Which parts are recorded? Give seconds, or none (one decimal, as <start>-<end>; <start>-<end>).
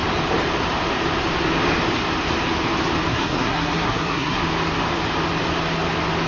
0.0-3.1; 4.4-6.3